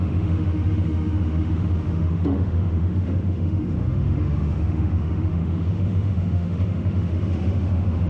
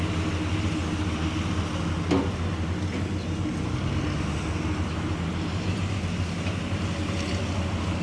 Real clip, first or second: second